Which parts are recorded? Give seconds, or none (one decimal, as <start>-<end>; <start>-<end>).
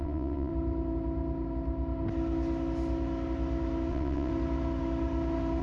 0.5-3.9; 4.3-5.6